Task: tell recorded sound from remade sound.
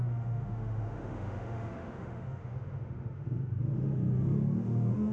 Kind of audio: remade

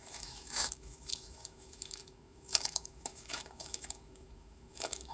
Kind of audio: remade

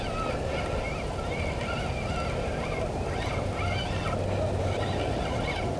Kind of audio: recorded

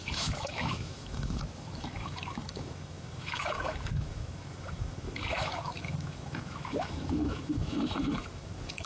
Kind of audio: remade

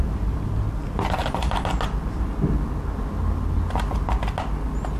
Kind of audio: recorded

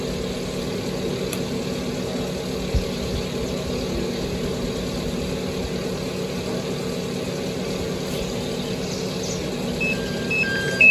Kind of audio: recorded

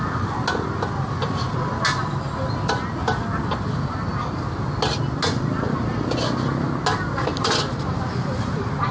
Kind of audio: recorded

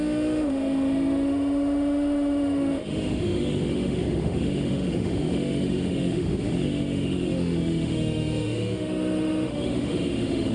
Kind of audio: remade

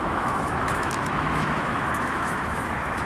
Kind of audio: remade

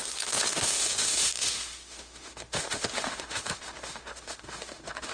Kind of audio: remade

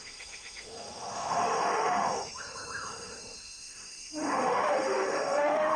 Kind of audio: remade